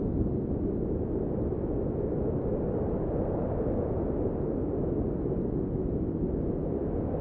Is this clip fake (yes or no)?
no